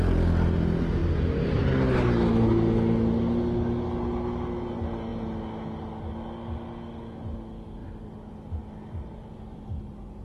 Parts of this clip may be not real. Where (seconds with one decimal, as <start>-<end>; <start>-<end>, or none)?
1.0-1.6